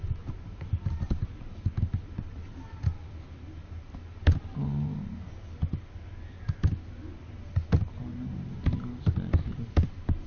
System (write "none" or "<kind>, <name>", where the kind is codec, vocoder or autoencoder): none